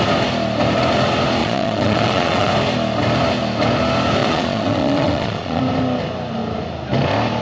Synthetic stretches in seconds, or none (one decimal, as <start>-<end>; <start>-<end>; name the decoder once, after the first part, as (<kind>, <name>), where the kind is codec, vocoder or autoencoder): 1.4-2.5 (vocoder, Vocos); 4.2-5.6